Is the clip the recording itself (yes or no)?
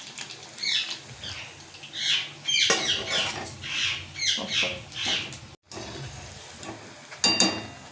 yes